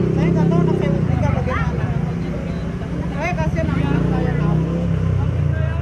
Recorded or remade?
recorded